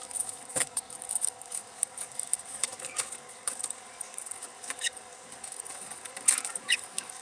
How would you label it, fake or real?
fake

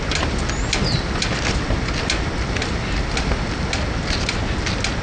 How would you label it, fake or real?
real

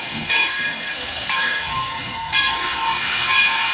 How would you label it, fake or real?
fake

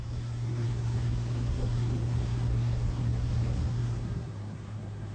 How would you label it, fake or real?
fake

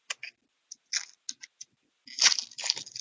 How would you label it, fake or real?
real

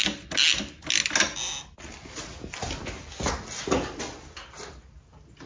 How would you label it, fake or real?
real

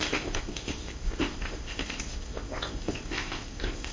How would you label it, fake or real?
fake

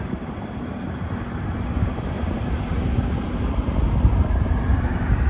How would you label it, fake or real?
fake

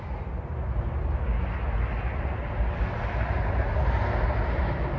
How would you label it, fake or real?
real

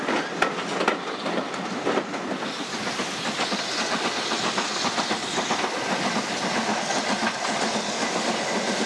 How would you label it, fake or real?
real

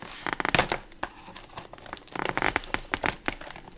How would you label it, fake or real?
real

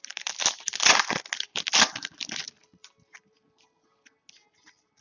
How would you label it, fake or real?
real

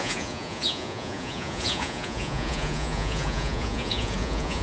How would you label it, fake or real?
fake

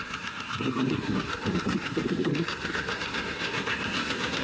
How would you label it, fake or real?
fake